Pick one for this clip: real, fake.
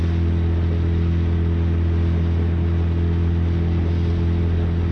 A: real